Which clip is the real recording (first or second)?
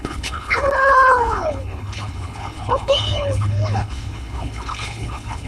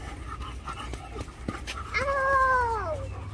second